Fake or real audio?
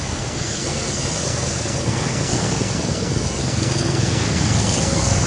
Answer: fake